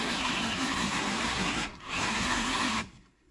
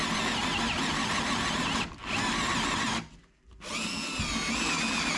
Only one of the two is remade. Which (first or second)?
first